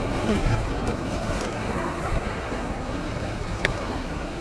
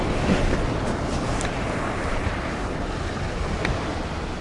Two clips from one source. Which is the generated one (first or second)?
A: first